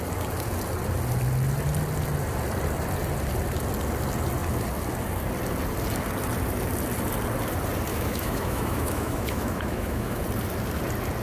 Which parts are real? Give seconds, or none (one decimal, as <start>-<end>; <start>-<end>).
0.0-7.9; 10.2-11.2